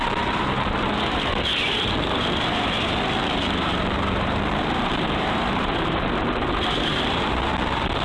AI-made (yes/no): yes